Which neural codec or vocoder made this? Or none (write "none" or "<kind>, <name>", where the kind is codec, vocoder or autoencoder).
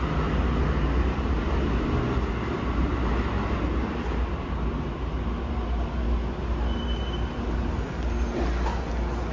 none